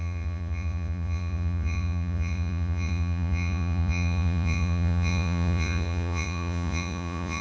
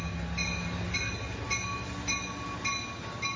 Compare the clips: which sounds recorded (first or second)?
second